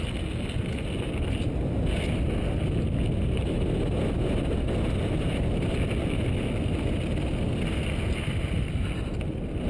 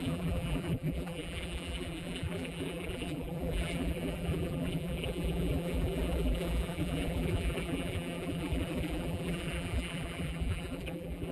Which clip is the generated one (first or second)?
second